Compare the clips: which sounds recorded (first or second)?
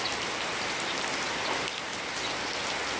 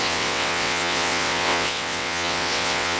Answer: first